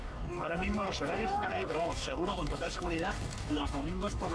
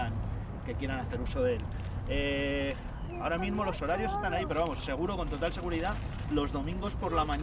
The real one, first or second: second